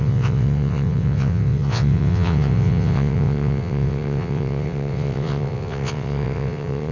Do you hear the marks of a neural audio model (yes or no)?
yes